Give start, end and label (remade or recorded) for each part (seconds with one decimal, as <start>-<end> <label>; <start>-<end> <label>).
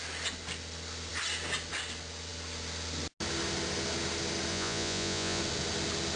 0.0-4.5 recorded; 4.5-5.4 remade; 5.4-6.2 recorded